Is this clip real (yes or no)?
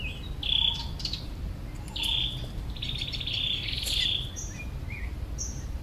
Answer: yes